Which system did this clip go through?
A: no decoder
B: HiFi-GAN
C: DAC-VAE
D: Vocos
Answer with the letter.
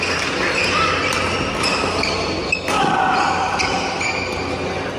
A